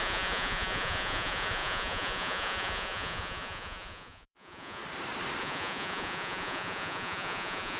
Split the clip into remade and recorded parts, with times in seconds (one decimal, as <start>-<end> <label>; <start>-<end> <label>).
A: 0.0-4.8 remade; 4.8-5.4 recorded; 5.4-7.8 remade